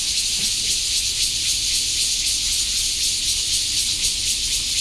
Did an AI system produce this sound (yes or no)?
no